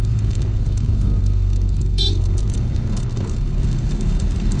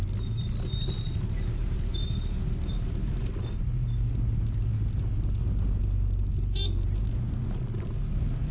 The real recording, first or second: second